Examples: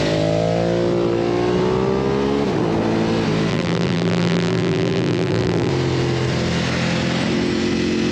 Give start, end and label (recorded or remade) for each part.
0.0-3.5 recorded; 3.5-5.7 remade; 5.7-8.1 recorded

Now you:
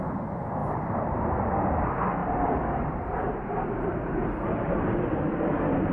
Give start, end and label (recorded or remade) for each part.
0.0-0.6 recorded; 0.6-1.1 remade; 1.1-2.2 recorded; 2.2-5.0 remade; 5.0-5.9 recorded

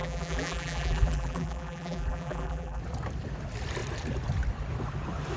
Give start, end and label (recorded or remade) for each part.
0.0-2.8 remade; 2.8-5.4 recorded

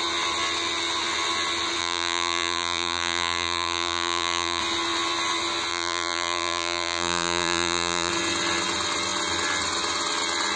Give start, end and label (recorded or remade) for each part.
0.0-1.8 recorded; 1.8-4.6 remade; 4.6-5.7 recorded; 5.7-8.1 remade; 8.1-10.6 recorded

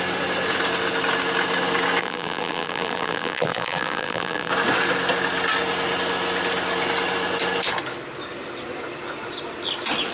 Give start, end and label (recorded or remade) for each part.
0.0-2.0 recorded; 2.0-4.5 remade; 4.5-10.1 recorded

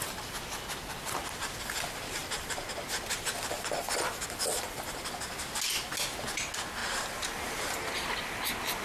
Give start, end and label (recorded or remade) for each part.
0.0-2.2 recorded; 2.2-3.2 remade; 3.2-6.8 recorded; 6.8-7.9 remade; 7.9-8.8 recorded

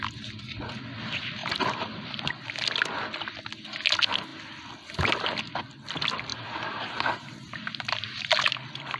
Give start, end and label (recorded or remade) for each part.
0.0-1.4 recorded; 1.4-2.3 remade; 2.3-6.3 recorded; 6.3-8.3 remade; 8.3-9.0 recorded